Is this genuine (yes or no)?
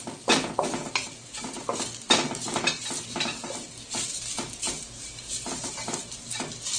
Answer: yes